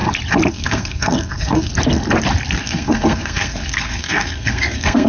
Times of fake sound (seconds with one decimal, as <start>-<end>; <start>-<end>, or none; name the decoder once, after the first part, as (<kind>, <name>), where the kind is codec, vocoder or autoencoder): 0.5-1.7 (codec, SNAC); 2.6-5.1